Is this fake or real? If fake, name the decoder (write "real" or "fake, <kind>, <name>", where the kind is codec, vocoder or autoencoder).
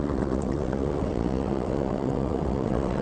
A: fake, vocoder, WaveNeXt